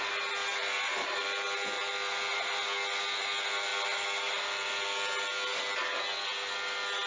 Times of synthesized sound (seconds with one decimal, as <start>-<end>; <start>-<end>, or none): none